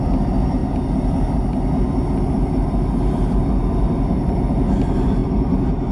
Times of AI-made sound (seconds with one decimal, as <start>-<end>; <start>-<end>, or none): none